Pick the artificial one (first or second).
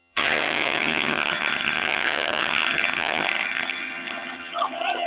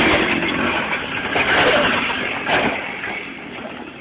first